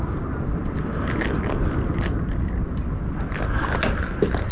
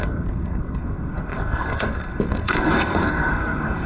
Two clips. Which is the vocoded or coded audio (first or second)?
second